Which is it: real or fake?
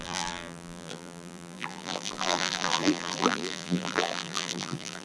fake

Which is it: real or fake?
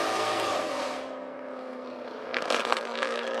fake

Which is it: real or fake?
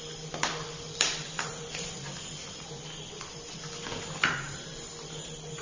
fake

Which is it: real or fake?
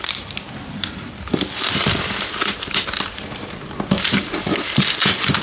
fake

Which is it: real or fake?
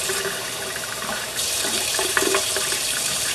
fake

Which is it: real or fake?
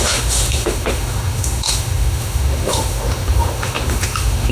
fake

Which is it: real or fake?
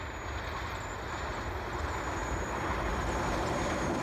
real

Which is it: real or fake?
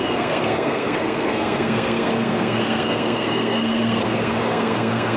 fake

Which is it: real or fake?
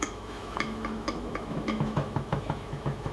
fake